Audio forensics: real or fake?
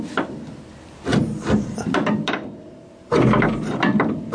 real